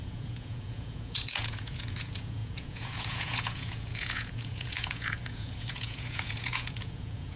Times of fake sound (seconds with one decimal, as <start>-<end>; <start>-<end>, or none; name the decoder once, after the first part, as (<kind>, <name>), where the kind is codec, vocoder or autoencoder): 0.0-7.4 (vocoder, Vocos)